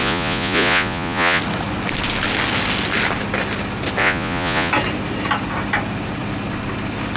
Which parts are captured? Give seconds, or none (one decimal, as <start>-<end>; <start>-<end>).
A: 1.4-4.0; 4.7-7.2